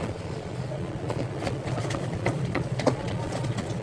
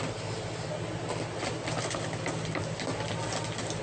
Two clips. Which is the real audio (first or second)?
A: second